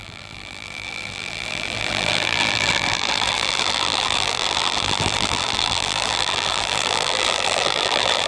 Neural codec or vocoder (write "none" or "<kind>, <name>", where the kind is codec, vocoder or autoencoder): vocoder, BigVGAN v2